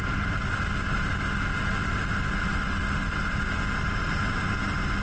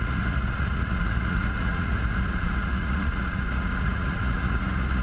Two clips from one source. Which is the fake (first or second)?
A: second